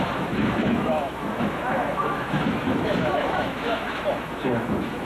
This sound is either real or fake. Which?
fake